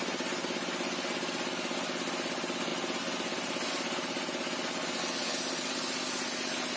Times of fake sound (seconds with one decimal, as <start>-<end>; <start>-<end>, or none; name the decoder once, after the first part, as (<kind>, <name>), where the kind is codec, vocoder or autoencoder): none